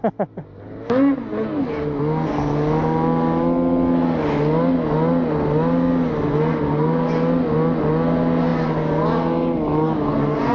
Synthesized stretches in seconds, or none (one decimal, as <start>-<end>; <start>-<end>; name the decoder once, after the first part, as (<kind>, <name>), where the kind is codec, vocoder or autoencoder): none